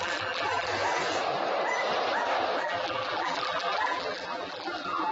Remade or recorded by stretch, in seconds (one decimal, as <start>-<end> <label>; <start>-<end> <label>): 0.0-0.7 remade; 0.7-2.6 recorded; 2.6-5.1 remade